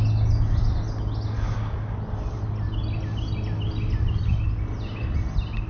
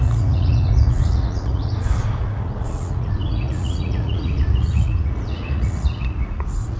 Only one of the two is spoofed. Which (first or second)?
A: second